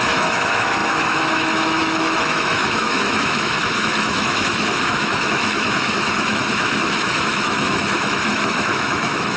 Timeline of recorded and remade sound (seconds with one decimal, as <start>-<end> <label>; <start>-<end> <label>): 0.0-9.4 remade